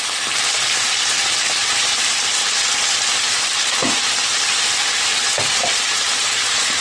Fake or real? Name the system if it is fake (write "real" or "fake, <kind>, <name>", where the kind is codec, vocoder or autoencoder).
real